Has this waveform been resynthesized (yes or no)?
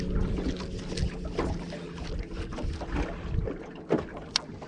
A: no